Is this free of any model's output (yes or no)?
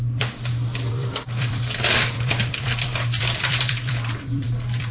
no